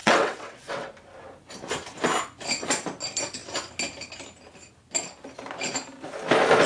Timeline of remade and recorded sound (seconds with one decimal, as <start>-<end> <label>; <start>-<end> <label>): 0.0-0.9 remade; 0.9-6.7 recorded